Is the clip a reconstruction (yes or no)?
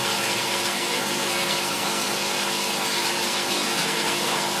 yes